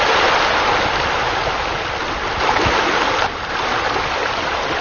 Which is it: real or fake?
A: real